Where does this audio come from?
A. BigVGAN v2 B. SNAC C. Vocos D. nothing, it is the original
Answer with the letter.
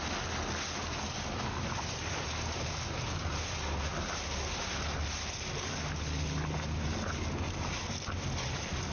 D